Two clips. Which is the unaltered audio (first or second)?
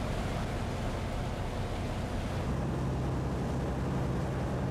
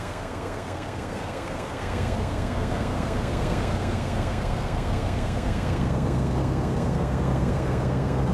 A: first